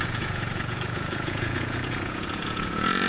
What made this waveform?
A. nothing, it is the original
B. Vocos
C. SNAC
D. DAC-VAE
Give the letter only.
B